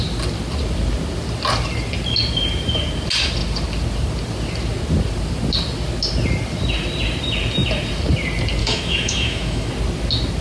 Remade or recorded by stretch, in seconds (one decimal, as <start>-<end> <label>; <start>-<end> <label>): 0.0-8.6 recorded; 8.6-9.7 remade; 9.7-10.4 recorded